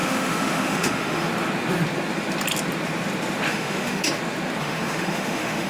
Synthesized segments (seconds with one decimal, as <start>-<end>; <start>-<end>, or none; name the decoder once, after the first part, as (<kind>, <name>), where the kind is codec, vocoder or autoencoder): 0.0-1.3 (autoencoder, DAC-VAE); 3.5-4.0; 4.6-5.7